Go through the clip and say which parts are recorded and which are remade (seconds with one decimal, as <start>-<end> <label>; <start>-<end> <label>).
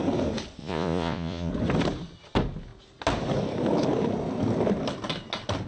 0.0-0.6 recorded; 0.6-1.5 remade; 1.5-5.7 recorded